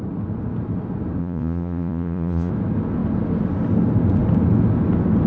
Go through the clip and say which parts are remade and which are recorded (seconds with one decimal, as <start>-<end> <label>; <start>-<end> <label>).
0.0-1.2 recorded; 1.2-2.5 remade; 2.5-5.3 recorded